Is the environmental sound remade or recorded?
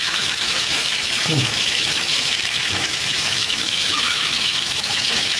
remade